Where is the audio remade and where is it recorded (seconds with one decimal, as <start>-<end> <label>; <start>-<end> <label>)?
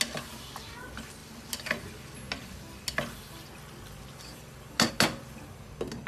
0.0-6.1 recorded